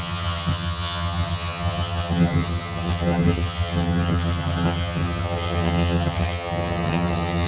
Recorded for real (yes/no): no